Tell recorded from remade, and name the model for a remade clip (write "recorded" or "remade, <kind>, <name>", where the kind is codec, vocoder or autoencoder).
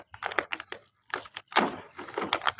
recorded